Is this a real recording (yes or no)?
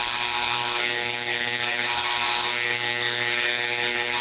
no